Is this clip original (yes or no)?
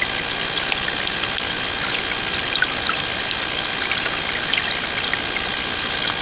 yes